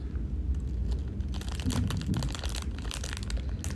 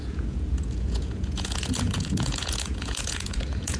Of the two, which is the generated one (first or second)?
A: second